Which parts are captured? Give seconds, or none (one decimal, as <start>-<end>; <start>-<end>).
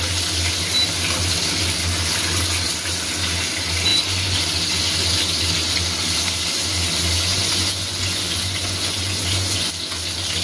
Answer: 0.0-3.9; 4.4-7.3; 9.7-10.4